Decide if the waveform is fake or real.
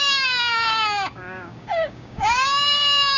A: fake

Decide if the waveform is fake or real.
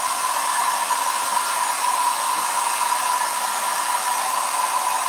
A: real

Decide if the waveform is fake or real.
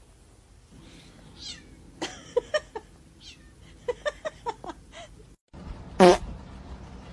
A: real